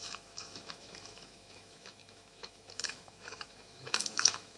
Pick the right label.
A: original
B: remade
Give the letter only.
B